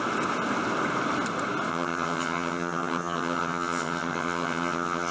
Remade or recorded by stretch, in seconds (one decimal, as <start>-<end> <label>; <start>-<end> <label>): 0.0-1.7 recorded; 1.7-5.1 remade